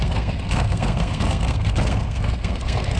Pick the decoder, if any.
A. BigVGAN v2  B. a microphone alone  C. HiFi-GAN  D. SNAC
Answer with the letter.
D